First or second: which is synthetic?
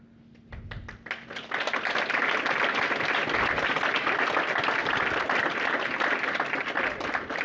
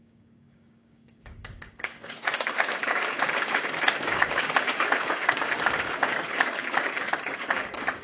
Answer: second